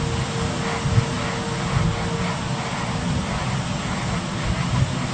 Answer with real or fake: real